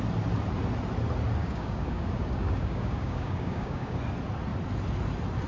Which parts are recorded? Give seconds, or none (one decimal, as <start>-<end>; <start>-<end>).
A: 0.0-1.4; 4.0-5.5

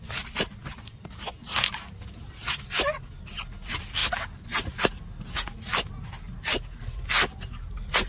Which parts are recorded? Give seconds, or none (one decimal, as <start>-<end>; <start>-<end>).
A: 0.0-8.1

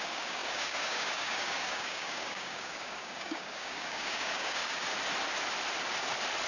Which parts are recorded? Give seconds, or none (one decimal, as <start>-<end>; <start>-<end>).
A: 4.9-6.5

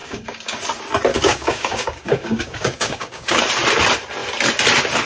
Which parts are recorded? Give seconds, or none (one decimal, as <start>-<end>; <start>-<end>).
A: 0.6-1.1; 3.4-5.1

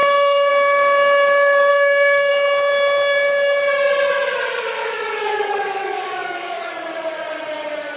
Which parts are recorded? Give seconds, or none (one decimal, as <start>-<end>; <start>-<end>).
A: 0.5-1.7; 2.3-4.8; 6.7-8.0